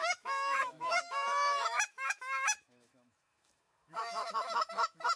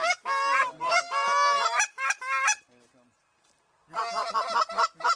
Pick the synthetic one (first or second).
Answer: first